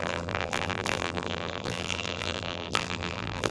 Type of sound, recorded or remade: remade